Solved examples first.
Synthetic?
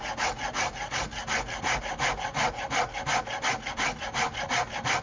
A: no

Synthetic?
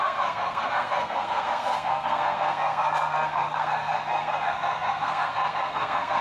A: yes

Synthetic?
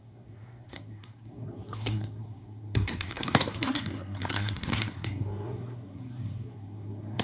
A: yes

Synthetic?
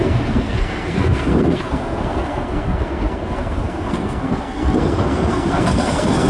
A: yes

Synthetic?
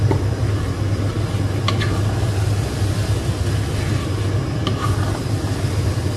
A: no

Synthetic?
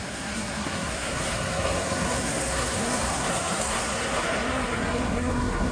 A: yes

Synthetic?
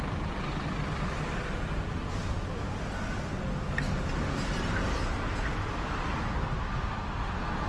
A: no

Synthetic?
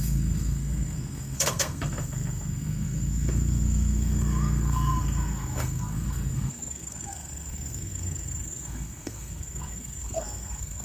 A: yes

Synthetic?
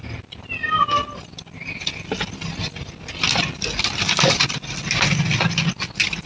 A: no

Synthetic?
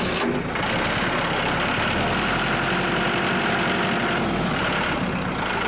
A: no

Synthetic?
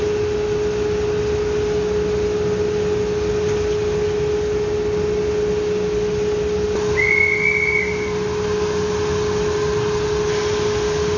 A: no